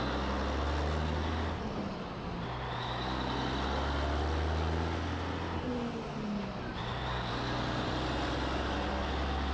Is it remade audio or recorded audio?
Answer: recorded